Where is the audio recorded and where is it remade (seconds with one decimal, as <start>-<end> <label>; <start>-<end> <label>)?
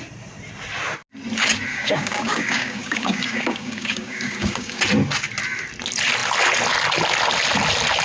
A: 0.0-1.7 recorded; 1.7-4.8 remade; 4.8-8.0 recorded